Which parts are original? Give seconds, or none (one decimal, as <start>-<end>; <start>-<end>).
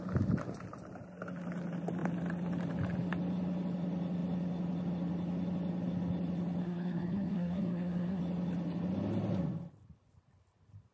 0.0-6.6; 8.2-10.9